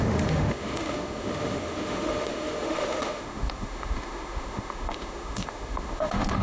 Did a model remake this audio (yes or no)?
yes